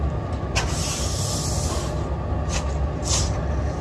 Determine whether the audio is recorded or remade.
recorded